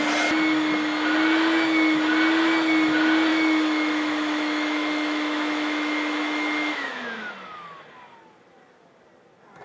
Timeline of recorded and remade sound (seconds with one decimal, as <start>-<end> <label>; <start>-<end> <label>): 0.0-3.3 recorded; 3.3-7.3 remade; 7.3-9.6 recorded